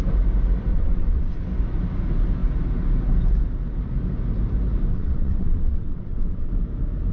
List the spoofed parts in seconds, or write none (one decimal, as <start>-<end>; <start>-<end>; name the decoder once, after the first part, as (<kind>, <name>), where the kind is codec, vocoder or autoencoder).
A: 0.7-1.4 (vocoder, WaveNeXt); 4.9-6.5